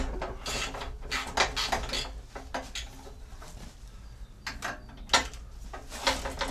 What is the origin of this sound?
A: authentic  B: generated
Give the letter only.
A